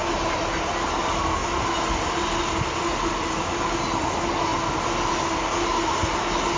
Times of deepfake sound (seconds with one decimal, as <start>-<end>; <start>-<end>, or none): none